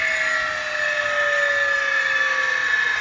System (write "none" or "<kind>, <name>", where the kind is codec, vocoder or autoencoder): none